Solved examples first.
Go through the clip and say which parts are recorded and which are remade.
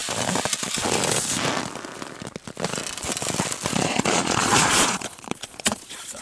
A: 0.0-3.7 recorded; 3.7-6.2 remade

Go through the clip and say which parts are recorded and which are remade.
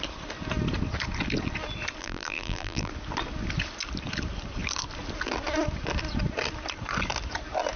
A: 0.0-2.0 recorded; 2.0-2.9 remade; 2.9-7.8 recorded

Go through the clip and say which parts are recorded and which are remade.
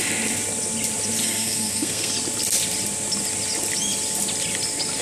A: 0.0-1.2 recorded; 1.2-2.1 remade; 2.1-5.0 recorded